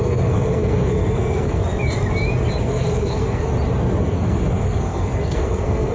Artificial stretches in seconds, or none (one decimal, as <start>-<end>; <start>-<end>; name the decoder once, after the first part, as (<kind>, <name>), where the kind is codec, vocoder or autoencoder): 0.0-1.6 (codec, SNAC); 2.6-3.5; 4.0-5.9